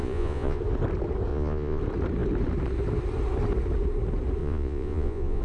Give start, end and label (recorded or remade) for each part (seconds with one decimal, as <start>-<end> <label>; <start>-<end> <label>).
0.0-0.6 remade; 0.6-1.3 recorded; 1.3-1.8 remade; 1.8-4.4 recorded; 4.4-5.4 remade